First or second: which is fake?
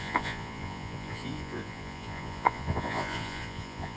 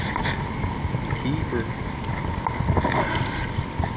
first